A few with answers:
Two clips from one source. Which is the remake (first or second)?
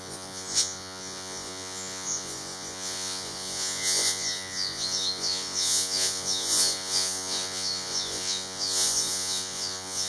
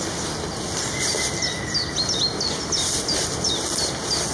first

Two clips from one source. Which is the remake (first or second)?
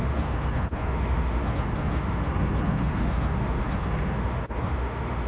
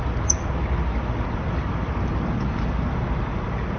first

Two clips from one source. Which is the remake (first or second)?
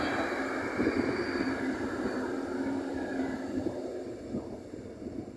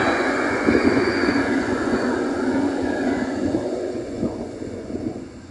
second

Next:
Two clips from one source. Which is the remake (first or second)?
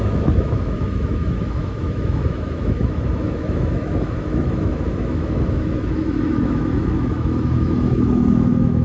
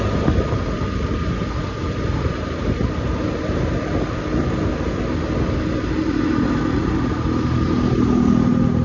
first